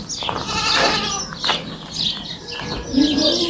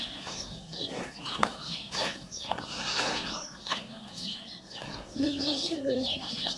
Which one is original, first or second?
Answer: first